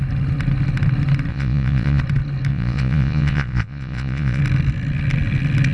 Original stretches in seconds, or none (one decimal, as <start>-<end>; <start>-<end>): 0.0-1.3; 2.0-2.5; 4.4-5.7